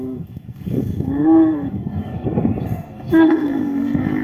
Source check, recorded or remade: remade